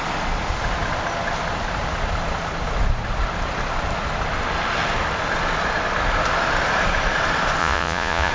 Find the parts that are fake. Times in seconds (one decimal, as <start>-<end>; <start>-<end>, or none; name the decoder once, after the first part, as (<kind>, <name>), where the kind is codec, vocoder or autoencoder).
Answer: 7.6-8.3 (vocoder, Vocos)